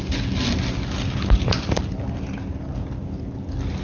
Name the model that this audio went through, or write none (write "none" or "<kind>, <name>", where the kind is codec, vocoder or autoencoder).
none